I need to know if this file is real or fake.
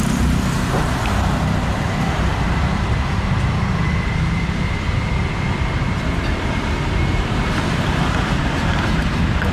fake